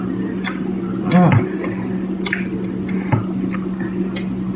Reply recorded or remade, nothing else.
recorded